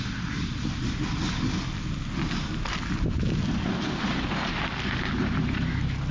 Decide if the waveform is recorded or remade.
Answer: recorded